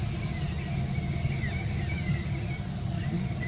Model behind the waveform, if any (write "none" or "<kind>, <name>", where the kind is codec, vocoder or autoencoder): none